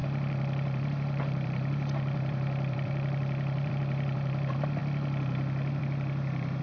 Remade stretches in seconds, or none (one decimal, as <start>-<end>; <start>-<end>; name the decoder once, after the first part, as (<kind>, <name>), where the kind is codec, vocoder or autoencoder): 0.0-4.8 (vocoder, BigVGAN v2); 5.8-6.6